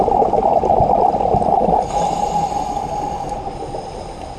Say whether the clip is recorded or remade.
recorded